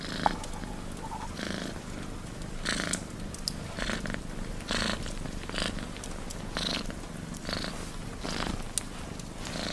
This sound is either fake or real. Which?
real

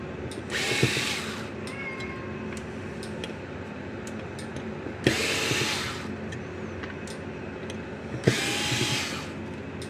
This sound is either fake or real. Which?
real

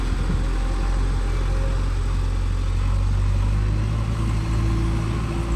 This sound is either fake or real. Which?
real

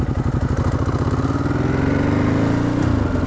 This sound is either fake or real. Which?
real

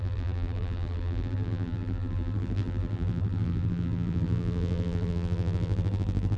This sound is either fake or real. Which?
fake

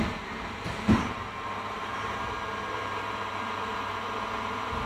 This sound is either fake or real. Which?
fake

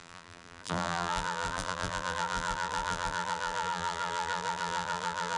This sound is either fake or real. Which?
fake